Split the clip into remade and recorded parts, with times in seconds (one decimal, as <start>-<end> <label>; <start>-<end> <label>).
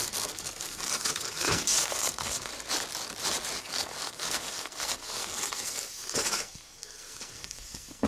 0.0-2.5 remade; 2.5-3.6 recorded; 3.6-8.1 remade